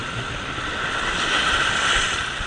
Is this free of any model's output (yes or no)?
yes